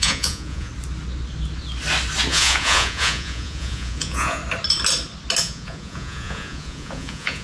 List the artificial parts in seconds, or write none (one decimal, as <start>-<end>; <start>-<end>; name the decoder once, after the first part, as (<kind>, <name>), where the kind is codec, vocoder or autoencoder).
0.0-0.7 (vocoder, Vocos); 2.3-4.4; 5.4-7.4